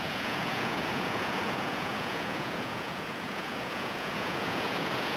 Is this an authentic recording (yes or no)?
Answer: no